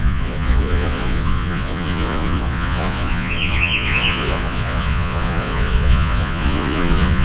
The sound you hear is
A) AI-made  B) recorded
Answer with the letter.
A